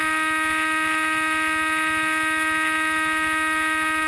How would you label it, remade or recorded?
remade